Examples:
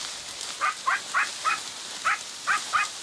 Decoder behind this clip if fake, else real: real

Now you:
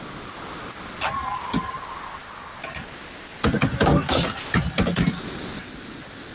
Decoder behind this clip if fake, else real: real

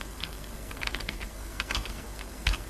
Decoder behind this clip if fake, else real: fake, codec, SNAC